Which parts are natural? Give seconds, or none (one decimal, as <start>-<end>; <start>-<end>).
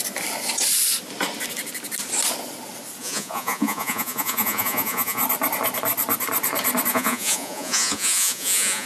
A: 0.0-3.0; 5.2-6.9